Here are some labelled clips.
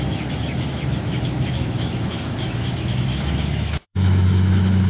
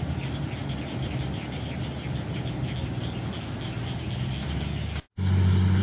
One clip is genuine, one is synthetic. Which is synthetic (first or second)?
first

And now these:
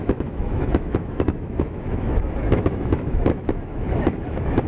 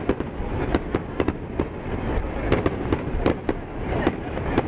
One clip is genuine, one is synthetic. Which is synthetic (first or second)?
first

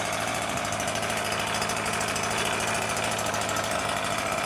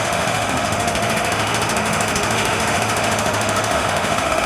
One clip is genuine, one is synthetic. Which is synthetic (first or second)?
second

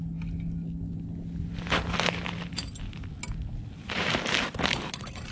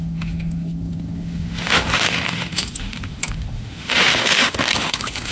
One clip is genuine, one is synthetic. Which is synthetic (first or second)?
second